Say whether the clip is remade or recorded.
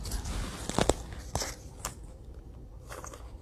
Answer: recorded